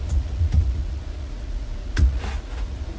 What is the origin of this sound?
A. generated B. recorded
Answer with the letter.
A